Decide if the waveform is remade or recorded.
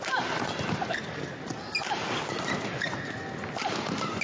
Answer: recorded